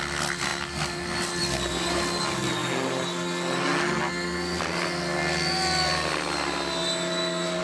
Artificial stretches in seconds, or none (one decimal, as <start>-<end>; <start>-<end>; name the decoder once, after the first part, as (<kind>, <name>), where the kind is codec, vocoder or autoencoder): none